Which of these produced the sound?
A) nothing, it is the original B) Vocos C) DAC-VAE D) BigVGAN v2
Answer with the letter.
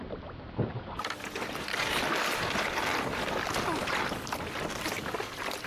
A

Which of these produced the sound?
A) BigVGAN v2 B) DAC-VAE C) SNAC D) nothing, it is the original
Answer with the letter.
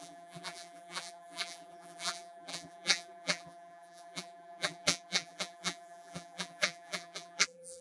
A